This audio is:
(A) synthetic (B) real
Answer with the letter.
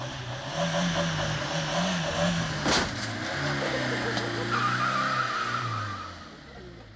B